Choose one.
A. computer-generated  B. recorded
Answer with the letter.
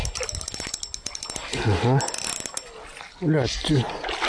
B